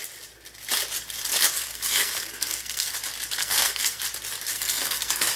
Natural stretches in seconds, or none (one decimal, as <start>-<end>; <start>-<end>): 0.0-1.3; 2.9-3.4; 4.0-4.5